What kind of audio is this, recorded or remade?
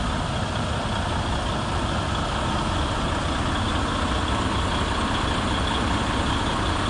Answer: recorded